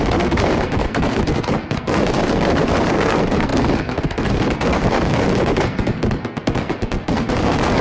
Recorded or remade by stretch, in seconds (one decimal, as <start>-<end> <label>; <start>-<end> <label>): 0.0-7.8 remade